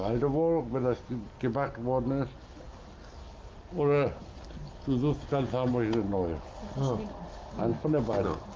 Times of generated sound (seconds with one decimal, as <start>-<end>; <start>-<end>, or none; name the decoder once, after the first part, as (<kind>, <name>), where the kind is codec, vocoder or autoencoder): none